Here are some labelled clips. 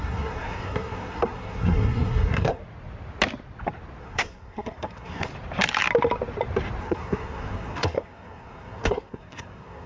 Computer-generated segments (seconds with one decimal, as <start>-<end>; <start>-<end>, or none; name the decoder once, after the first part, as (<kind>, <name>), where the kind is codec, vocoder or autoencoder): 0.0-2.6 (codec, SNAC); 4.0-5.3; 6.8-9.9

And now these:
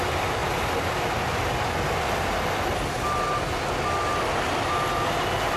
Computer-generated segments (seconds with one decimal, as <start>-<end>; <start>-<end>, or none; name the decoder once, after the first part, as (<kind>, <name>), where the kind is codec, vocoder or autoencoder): none

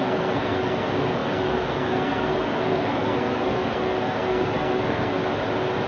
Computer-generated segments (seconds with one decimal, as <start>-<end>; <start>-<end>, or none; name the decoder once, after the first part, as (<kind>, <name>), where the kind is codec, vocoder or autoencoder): 0.0-5.2 (codec, SNAC)

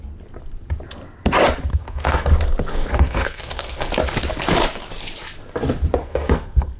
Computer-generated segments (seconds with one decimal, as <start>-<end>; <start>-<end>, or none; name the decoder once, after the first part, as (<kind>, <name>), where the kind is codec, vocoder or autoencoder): 1.7-2.3 (codec, SNAC); 2.7-3.9; 6.0-6.8